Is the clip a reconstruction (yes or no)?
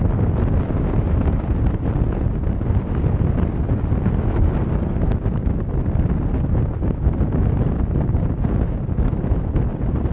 no